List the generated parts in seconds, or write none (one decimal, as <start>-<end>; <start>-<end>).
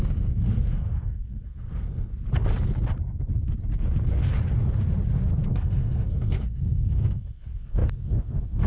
0.0-2.1; 5.5-8.7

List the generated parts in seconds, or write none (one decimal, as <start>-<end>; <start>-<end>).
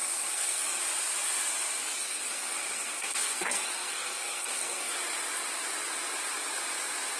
0.0-0.8; 1.8-4.9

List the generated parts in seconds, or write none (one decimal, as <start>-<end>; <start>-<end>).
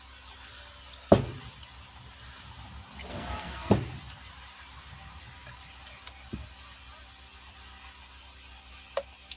3.1-3.7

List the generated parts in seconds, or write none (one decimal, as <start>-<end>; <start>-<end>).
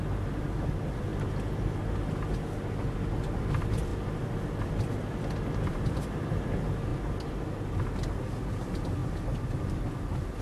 none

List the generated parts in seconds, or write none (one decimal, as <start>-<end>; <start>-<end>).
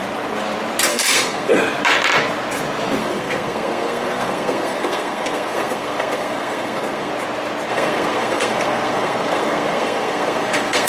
0.9-1.6; 3.0-7.1; 7.7-10.9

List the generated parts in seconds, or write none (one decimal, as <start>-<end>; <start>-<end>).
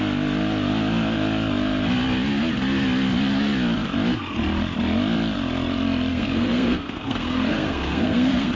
6.1-8.5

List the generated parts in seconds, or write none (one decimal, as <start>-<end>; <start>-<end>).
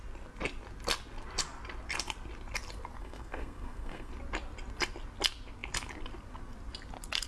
3.0-4.1